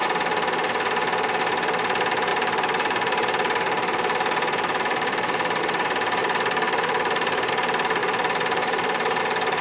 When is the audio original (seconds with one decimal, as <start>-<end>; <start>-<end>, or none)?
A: 0.0-2.3; 5.6-6.2; 7.5-8.0; 9.2-9.6